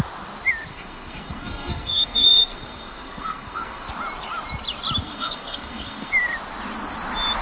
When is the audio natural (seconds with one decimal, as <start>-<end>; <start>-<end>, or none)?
0.0-0.7; 3.9-5.0; 6.1-7.4